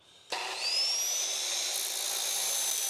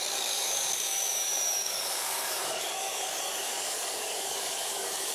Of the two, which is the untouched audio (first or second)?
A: first